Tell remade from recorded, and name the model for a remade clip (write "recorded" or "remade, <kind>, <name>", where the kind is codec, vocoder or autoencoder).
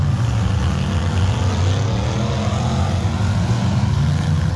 recorded